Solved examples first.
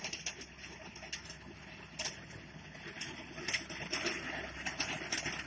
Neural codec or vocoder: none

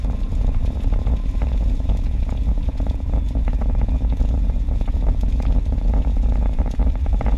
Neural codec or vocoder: vocoder, Vocos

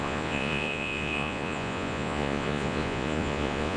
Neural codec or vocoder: vocoder, Vocos